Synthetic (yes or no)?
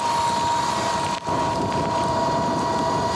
no